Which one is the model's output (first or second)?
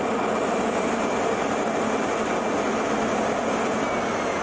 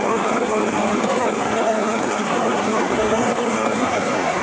second